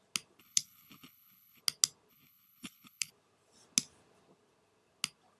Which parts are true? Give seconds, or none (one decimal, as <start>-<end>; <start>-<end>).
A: 0.0-0.4; 1.6-2.1; 3.1-5.4